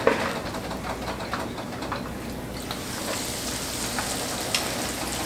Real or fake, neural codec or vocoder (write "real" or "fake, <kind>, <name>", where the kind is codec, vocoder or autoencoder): real